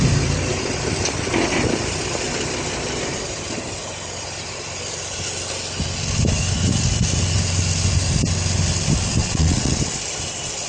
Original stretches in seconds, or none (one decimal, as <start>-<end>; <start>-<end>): 0.0-9.2; 9.8-10.7